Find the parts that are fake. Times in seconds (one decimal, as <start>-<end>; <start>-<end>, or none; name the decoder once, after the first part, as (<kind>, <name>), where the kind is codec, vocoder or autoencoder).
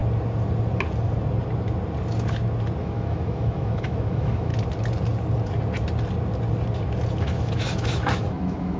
2.8-4.5 (autoencoder, DAC-VAE); 7.2-8.8